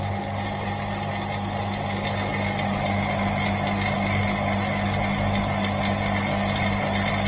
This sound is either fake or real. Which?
real